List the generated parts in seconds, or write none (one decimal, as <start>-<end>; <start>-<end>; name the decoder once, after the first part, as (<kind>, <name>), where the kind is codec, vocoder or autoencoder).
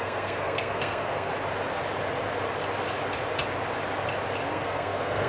0.0-1.3 (codec, SNAC); 4.5-5.3